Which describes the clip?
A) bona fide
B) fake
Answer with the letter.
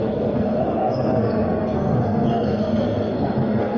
B